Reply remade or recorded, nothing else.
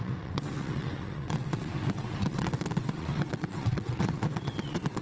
remade